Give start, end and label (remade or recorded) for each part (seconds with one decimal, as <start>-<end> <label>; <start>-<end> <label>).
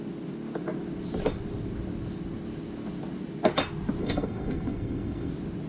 0.0-4.0 recorded; 4.0-5.3 remade; 5.3-5.7 recorded